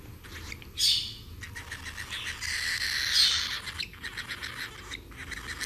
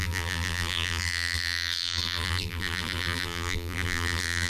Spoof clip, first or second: second